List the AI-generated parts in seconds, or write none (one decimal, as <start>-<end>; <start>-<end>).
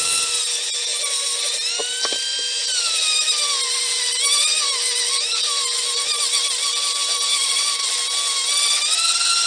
7.3-7.9